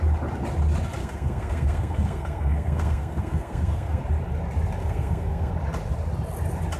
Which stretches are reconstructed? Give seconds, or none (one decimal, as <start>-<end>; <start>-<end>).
1.0-4.0; 4.8-5.5